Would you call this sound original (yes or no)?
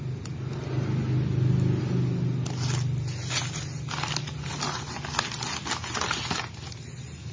yes